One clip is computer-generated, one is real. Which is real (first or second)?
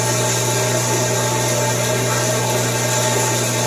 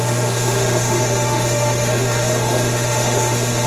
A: first